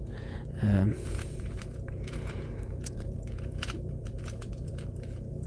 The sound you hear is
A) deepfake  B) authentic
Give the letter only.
A